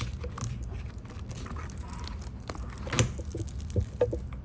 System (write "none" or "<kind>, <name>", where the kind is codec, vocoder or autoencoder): none